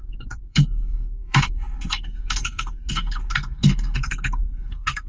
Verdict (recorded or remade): remade